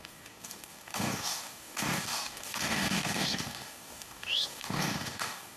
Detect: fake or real fake